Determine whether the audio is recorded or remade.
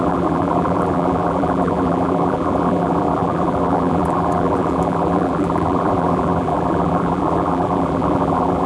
remade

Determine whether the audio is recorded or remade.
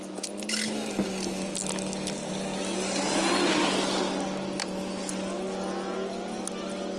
recorded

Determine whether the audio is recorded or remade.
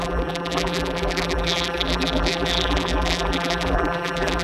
remade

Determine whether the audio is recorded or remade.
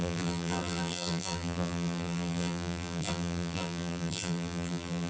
remade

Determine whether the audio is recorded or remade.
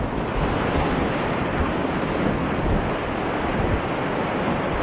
recorded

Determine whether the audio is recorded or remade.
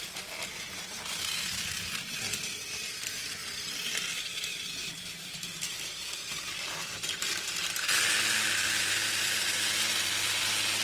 recorded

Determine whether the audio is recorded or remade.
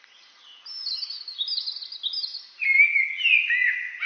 recorded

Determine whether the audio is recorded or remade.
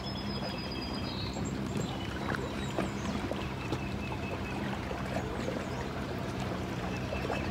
remade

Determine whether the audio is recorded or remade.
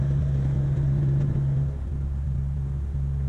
recorded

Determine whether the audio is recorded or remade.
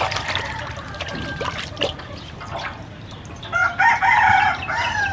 recorded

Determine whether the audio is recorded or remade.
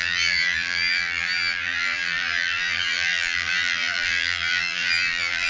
remade